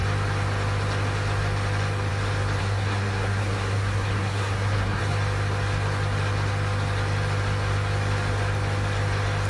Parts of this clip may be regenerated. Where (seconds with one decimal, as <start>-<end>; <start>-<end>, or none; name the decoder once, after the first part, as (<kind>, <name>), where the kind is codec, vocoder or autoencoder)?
2.6-5.0 (codec, SNAC)